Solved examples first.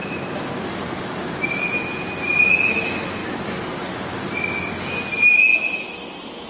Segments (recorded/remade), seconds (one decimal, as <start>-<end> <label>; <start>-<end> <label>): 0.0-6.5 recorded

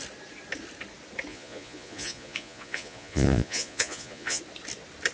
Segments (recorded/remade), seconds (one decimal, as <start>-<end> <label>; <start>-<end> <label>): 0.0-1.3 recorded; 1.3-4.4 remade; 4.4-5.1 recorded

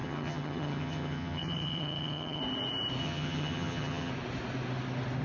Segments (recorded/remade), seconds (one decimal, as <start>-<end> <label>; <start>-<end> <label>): 0.0-2.4 remade; 2.4-3.0 recorded; 3.0-4.1 remade; 4.1-5.2 recorded